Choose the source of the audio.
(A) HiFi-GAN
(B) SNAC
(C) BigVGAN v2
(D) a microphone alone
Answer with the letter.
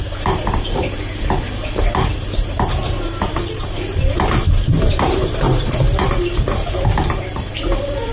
C